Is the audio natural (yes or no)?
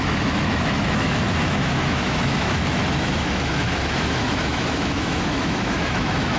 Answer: no